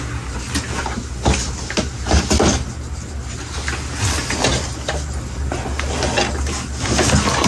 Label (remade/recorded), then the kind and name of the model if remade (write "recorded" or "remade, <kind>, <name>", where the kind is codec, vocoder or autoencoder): recorded